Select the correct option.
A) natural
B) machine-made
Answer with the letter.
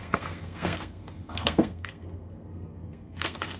B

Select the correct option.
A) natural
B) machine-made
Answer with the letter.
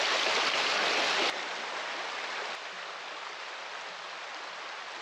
A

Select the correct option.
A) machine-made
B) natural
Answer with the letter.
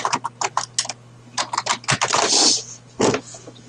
B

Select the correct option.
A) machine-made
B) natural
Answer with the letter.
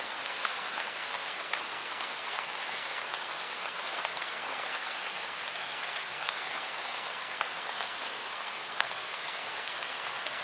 A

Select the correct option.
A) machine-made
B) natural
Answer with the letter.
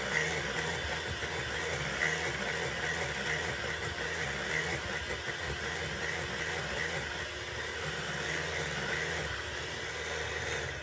B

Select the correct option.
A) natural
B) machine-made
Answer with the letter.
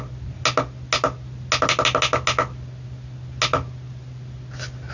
A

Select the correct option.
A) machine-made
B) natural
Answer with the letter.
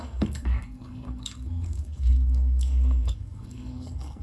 A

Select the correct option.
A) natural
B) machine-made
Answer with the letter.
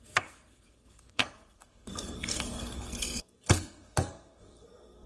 B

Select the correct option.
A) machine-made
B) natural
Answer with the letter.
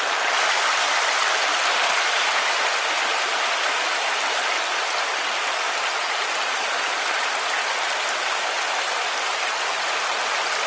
B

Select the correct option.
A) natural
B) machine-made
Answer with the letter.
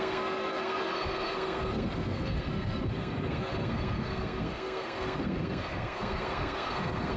B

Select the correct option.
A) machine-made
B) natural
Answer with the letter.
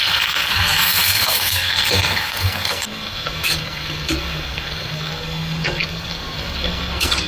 A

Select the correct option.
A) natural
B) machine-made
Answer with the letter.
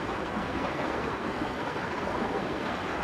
B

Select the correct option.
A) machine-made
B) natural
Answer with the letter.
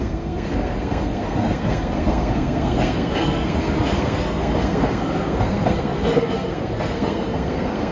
A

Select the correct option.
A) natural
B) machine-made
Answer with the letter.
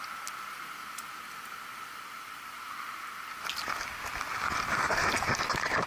A